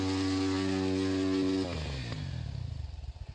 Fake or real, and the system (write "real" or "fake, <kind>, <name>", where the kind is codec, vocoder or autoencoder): real